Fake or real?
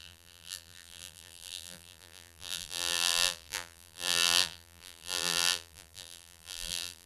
fake